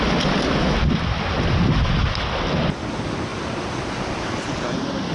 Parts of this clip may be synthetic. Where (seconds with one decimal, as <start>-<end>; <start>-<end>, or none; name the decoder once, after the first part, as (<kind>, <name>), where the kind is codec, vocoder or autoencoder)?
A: none